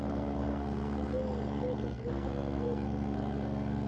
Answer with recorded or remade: remade